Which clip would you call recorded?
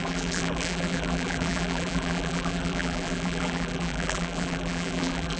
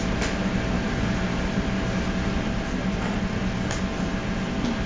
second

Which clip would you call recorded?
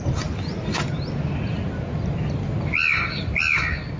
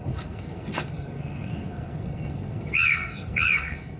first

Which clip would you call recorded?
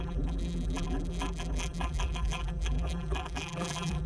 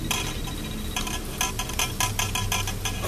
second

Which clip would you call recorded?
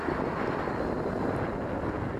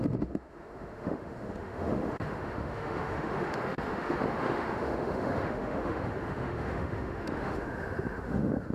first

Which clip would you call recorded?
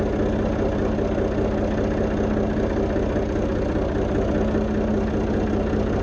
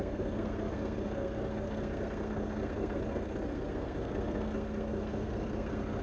first